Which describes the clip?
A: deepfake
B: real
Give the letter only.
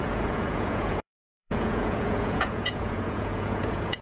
A